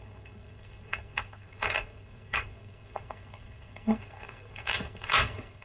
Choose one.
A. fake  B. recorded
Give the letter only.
A